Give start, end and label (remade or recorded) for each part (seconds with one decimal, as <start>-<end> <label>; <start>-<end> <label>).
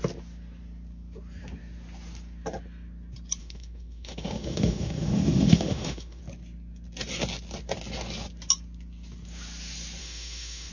0.0-3.4 recorded; 3.4-6.2 remade; 6.2-10.0 recorded; 10.0-10.7 remade